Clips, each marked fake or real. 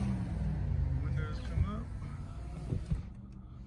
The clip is real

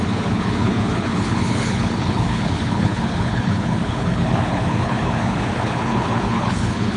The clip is fake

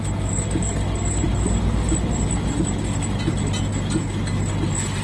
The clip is real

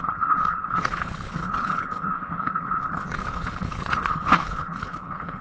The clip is fake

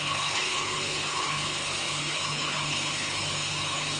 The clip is fake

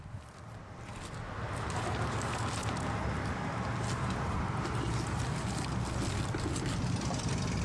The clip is real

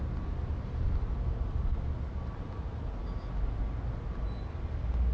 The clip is real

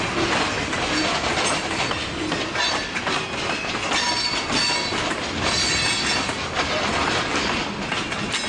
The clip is real